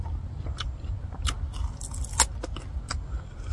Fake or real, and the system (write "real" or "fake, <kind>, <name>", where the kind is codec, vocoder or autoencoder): real